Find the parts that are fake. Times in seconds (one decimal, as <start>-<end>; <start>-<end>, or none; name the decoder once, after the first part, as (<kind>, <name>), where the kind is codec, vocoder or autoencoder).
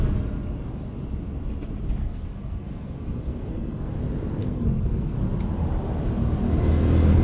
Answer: 2.0-3.9 (codec, SNAC); 4.4-5.2